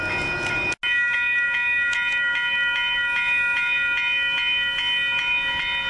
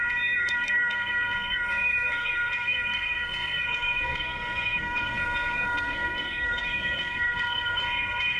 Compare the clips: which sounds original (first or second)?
first